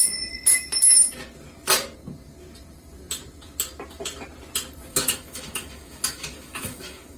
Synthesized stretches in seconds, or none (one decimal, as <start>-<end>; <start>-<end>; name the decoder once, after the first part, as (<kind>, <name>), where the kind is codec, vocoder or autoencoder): 4.9-7.2 (autoencoder, DAC-VAE)